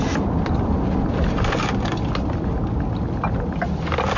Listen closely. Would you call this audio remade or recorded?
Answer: recorded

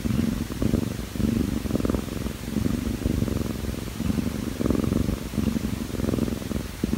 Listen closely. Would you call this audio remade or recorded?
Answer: recorded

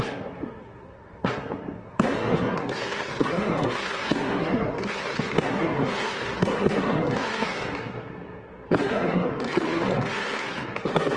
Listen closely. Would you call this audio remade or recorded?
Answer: remade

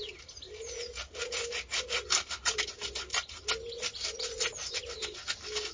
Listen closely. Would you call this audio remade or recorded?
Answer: recorded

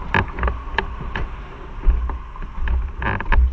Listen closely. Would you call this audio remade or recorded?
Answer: recorded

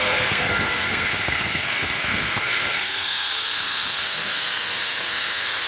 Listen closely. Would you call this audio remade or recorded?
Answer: remade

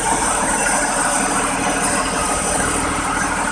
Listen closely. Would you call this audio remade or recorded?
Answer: remade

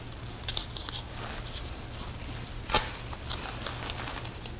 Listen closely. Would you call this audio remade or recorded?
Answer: recorded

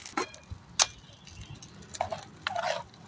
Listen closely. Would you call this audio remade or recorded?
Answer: recorded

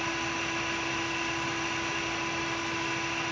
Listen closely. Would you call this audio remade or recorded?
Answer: recorded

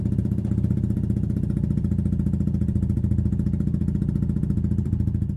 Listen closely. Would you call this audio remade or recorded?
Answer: remade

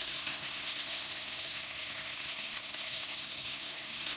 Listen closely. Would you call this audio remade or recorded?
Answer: remade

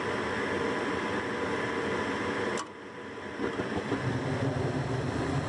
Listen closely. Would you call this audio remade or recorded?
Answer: recorded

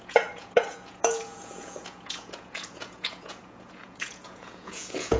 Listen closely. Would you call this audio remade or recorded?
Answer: remade